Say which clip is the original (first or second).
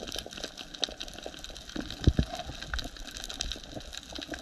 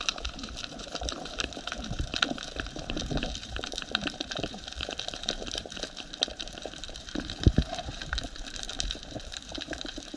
first